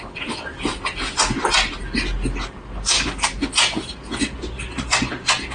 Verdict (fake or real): real